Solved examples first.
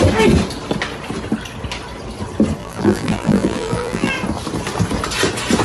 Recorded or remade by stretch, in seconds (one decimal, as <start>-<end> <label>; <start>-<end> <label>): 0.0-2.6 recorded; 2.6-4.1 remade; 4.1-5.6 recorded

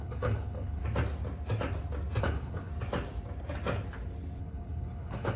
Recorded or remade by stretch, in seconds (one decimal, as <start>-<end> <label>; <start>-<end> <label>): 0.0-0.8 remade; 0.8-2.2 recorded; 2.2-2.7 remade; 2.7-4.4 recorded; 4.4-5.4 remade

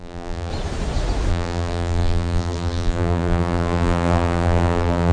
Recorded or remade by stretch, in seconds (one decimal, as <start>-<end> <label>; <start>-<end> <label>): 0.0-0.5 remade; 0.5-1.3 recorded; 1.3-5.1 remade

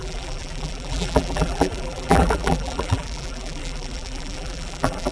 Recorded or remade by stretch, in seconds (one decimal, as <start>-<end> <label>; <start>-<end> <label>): 0.0-5.1 remade